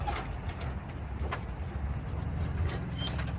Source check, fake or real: real